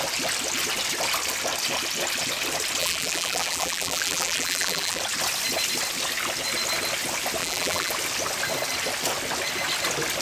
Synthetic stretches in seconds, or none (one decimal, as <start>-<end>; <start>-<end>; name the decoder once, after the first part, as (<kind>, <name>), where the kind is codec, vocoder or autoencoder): 2.8-5.0 (vocoder, BigVGAN v2); 7.4-7.9

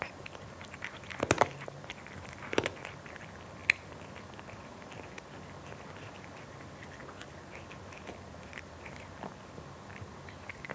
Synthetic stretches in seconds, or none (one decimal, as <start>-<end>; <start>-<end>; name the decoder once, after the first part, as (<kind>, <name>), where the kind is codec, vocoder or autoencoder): none

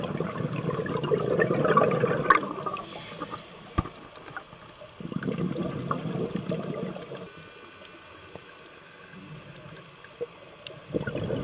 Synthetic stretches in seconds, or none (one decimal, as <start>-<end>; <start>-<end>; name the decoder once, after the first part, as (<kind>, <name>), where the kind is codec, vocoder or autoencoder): none

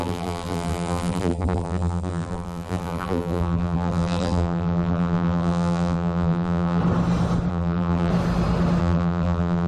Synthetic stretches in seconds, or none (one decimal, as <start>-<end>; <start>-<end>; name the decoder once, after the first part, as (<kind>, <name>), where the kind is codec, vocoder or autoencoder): 0.0-6.8 (vocoder, BigVGAN v2); 7.5-8.1; 8.8-9.7

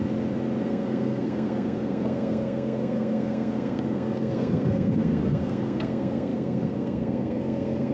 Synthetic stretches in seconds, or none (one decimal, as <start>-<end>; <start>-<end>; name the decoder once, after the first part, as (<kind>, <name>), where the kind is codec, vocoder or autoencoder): 0.6-7.9 (codec, SNAC)